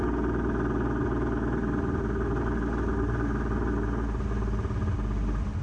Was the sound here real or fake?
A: real